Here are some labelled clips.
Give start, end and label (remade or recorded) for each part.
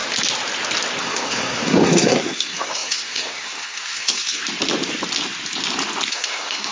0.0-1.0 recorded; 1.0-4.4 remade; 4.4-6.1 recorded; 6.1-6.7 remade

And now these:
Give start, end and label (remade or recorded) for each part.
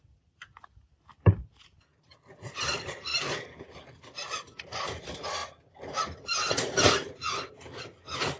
0.0-8.4 recorded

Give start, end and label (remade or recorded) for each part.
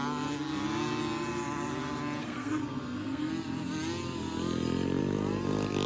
0.0-2.2 recorded; 2.2-3.3 remade; 3.3-5.9 recorded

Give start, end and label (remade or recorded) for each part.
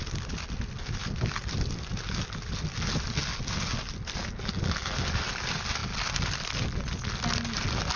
0.0-8.0 recorded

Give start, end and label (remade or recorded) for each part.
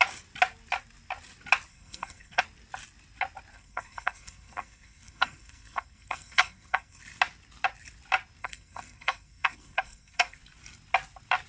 0.0-1.7 recorded; 1.7-2.4 remade; 2.4-3.5 recorded; 3.5-7.0 remade; 7.0-8.4 recorded; 8.4-10.4 remade; 10.4-11.5 recorded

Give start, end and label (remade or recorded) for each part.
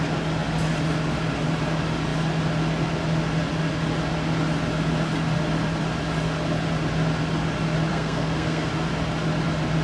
0.0-7.9 recorded; 7.9-8.7 remade; 8.7-9.8 recorded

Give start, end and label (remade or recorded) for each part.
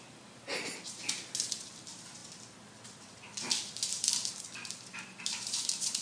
0.0-6.0 recorded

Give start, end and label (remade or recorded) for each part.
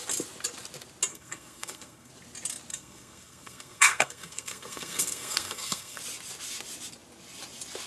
0.0-1.1 recorded; 1.1-2.1 remade; 2.1-2.7 recorded; 2.7-6.0 remade; 6.0-7.9 recorded